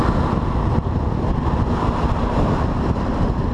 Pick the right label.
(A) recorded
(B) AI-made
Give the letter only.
A